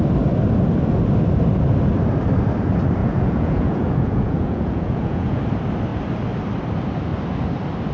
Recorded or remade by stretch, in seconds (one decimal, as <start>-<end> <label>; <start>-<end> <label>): 0.0-3.0 recorded; 3.0-5.4 remade; 5.4-7.9 recorded

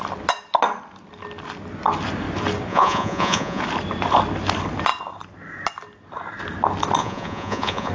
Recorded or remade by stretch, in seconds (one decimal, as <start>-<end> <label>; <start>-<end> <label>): 0.0-2.7 recorded; 2.7-3.6 remade; 3.6-7.0 recorded; 7.0-7.9 remade

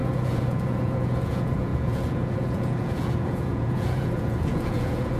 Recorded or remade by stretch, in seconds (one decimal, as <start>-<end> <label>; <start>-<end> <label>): 0.0-5.2 remade

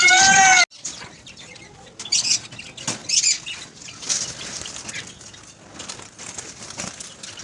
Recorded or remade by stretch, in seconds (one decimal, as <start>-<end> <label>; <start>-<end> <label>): 0.0-7.4 recorded

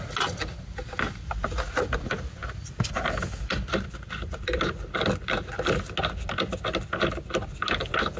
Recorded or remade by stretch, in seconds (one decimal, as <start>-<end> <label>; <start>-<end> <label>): 0.0-8.2 recorded

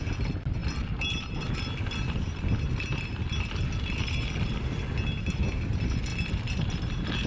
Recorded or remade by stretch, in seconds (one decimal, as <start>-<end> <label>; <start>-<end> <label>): 0.0-7.3 recorded